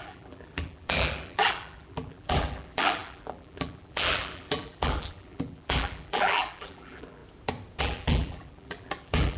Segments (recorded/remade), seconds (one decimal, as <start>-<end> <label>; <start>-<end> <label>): 0.0-7.2 remade; 7.2-7.8 recorded; 7.8-9.4 remade